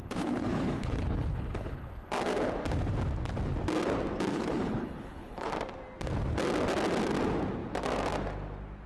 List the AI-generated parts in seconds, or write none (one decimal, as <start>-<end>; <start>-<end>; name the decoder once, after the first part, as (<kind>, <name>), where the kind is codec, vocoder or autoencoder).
0.0-2.1 (codec, HILCodec); 4.3-5.5